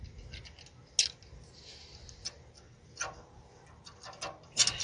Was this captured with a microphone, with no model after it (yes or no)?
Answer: yes